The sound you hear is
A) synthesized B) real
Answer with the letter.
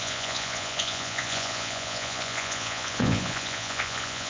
A